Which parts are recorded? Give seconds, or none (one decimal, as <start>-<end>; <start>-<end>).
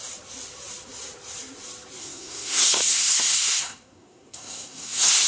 0.0-2.0